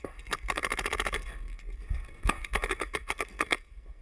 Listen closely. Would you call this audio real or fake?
fake